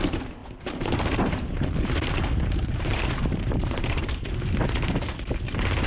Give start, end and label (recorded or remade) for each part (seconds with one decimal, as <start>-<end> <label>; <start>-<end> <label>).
0.0-0.4 recorded; 0.4-2.2 remade; 2.2-2.9 recorded; 2.9-4.3 remade; 4.3-5.9 recorded